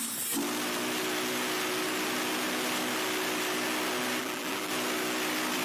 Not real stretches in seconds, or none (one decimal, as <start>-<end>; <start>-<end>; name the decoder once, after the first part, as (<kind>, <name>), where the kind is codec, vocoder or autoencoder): 4.2-4.7 (vocoder, BigVGAN v2)